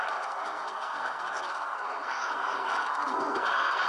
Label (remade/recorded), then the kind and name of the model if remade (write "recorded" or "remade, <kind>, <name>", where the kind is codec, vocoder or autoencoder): remade, codec, SNAC